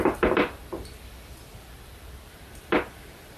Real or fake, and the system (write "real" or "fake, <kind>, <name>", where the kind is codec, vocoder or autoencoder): fake, vocoder, BigVGAN v2